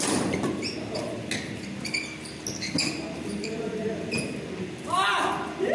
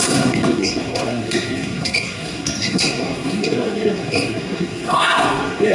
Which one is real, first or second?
first